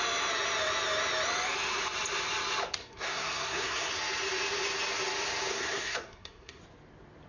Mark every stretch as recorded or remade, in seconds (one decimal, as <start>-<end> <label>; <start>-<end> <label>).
0.0-2.8 recorded; 2.8-3.9 remade; 3.9-5.5 recorded; 5.5-6.6 remade; 6.6-7.3 recorded